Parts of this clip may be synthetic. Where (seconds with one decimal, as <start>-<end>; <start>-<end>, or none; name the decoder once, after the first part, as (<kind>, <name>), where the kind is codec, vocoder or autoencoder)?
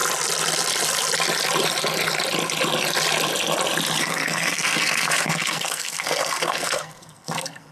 4.0-7.7 (codec, SNAC)